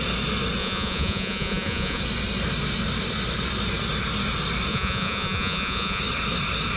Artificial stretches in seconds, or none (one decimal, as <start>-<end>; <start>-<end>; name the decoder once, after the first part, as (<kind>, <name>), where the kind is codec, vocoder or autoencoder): 0.6-2.0 (vocoder, Vocos); 4.7-6.0